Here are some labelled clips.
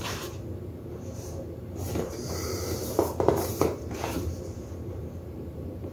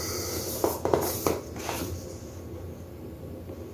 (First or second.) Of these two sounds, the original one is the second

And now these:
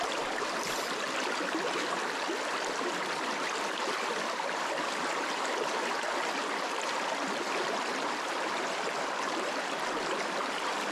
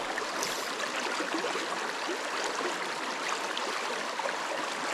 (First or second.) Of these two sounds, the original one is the second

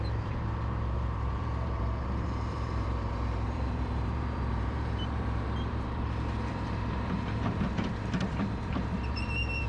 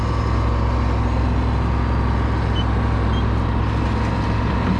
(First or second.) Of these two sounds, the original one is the second